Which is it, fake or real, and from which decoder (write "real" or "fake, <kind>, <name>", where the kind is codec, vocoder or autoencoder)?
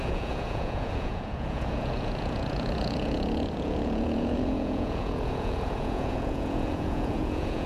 fake, vocoder, Vocos